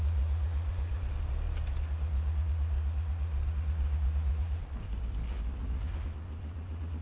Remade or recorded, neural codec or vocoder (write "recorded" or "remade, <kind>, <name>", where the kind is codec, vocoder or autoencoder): recorded